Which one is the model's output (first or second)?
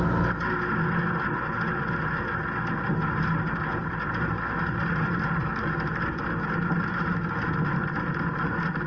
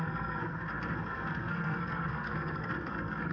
second